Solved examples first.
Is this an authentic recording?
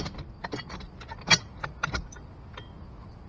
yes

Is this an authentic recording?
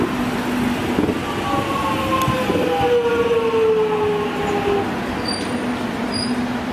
yes